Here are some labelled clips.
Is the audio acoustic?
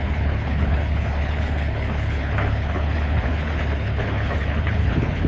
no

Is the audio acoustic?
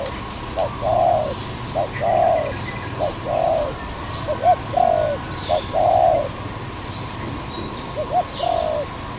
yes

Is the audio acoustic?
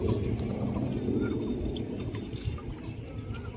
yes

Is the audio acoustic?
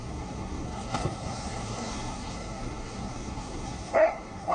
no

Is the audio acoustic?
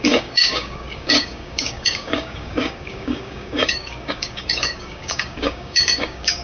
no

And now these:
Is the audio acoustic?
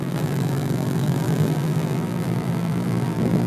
no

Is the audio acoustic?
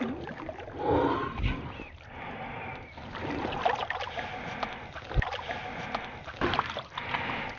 yes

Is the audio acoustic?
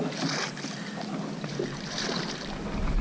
yes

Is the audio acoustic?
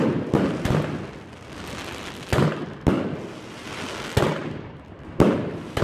yes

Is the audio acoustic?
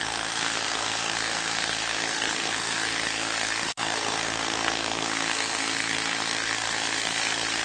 no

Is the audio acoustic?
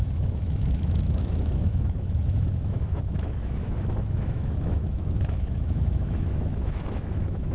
no